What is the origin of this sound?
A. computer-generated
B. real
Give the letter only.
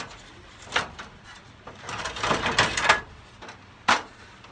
A